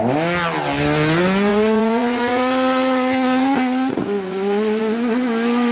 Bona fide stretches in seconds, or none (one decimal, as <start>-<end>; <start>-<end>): 0.0-1.5; 4.8-5.7